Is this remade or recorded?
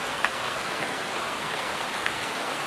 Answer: remade